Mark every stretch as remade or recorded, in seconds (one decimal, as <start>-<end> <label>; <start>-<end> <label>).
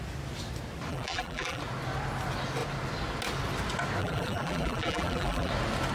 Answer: 0.0-0.9 recorded; 0.9-1.6 remade; 1.6-4.0 recorded; 4.0-5.5 remade; 5.5-5.9 recorded